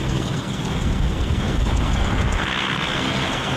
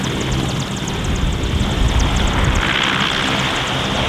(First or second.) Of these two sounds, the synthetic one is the first